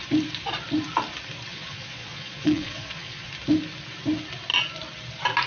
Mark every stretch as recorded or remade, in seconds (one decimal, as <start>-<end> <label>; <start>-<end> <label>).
0.0-1.5 recorded; 1.5-3.3 remade; 3.3-5.5 recorded